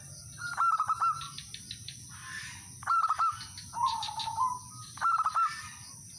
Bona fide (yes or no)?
yes